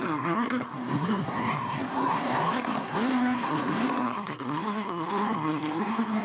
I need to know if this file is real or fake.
fake